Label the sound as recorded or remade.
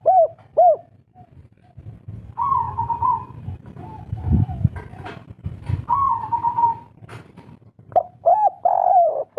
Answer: remade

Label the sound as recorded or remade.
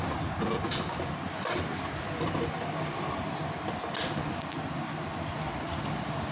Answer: recorded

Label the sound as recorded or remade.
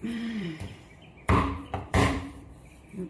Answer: remade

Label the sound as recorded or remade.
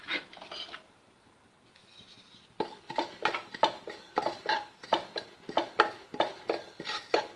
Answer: recorded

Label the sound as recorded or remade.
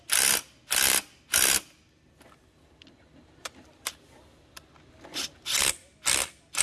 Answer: recorded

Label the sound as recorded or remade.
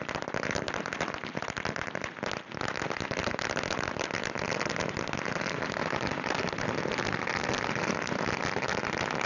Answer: recorded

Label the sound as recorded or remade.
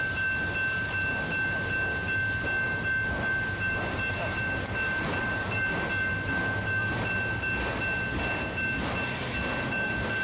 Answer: recorded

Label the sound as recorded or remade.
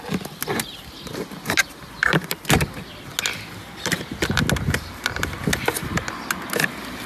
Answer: recorded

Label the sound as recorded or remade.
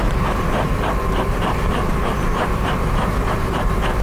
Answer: remade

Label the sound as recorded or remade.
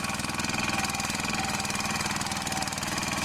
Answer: recorded